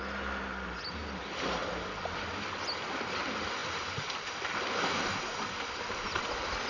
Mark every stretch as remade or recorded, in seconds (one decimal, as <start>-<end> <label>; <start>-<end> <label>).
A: 0.0-1.6 recorded; 1.6-2.2 remade; 2.2-3.6 recorded; 3.6-4.7 remade; 4.7-6.7 recorded